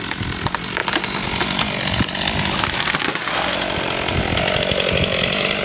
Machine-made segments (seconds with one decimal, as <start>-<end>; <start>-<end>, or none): none